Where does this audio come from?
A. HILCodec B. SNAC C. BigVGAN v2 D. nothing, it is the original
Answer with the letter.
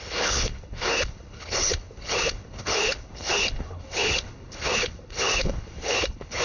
A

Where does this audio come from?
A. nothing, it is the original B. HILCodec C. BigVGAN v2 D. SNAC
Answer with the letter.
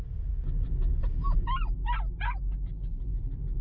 A